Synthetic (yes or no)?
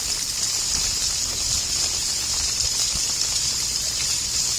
no